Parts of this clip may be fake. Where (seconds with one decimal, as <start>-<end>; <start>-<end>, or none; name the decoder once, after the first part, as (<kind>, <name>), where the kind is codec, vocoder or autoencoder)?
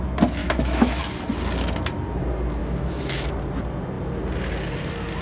0.4-1.0 (autoencoder, DAC-VAE); 2.6-3.3